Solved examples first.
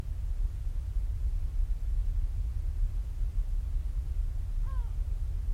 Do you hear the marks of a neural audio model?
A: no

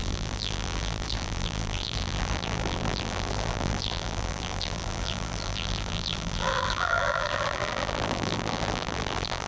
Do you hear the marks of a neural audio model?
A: yes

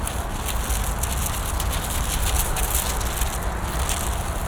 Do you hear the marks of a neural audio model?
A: no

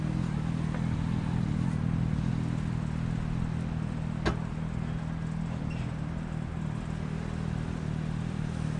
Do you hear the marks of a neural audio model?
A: no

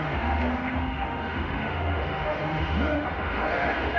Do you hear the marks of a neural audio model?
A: yes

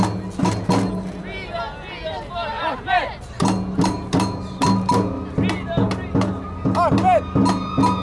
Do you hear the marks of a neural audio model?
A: no